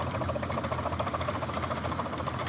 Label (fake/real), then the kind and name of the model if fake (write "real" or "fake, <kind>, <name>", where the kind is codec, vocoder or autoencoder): real